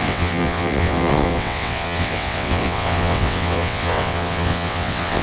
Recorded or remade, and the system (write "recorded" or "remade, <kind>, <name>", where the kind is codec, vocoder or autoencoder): remade, vocoder, WaveNeXt